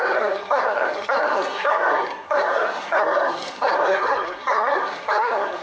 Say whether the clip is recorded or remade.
remade